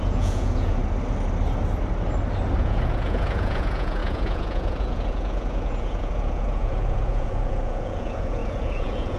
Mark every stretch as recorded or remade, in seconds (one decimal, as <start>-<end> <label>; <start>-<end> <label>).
0.0-0.8 remade; 0.8-2.6 recorded; 2.6-9.2 remade